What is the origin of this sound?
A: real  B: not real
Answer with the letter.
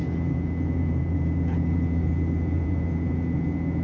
B